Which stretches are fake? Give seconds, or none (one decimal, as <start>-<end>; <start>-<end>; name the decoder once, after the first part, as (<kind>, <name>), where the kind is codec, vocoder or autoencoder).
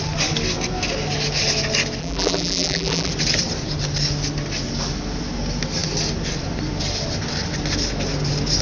2.0-3.1 (vocoder, BigVGAN v2)